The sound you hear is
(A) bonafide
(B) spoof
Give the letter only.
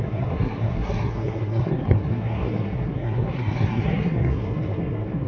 B